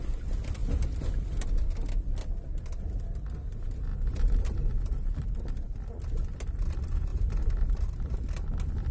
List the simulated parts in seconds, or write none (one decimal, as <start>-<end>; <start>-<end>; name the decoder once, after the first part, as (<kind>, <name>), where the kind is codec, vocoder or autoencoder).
3.9-5.1 (vocoder, BigVGAN v2); 7.1-7.7